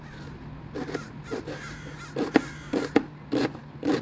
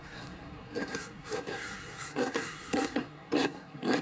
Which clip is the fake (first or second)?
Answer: second